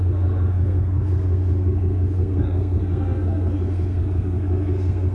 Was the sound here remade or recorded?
remade